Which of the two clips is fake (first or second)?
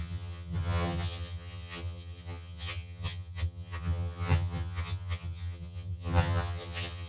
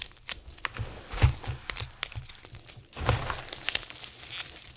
first